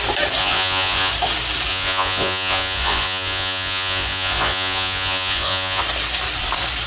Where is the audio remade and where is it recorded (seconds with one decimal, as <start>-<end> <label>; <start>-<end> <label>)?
0.0-0.4 recorded; 0.4-1.1 remade; 1.1-1.7 recorded; 1.7-5.8 remade; 5.8-6.9 recorded